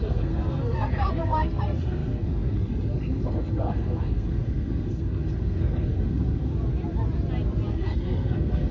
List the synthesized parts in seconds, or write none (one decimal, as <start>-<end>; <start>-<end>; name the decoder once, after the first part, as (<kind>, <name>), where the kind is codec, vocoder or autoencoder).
0.0-6.5 (codec, SNAC); 7.7-8.7